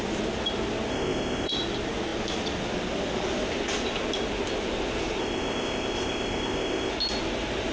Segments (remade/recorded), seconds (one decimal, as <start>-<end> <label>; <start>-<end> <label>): 0.0-0.9 recorded; 0.9-1.5 remade; 1.5-5.2 recorded; 5.2-6.9 remade; 6.9-7.7 recorded